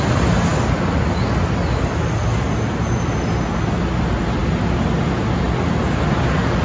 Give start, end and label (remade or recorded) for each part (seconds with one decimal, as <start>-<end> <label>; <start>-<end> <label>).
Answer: 0.0-6.6 recorded